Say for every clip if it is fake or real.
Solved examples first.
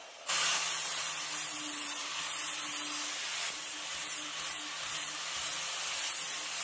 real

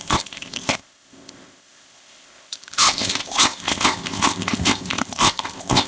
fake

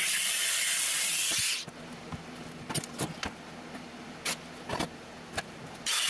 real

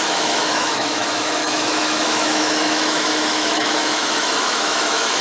fake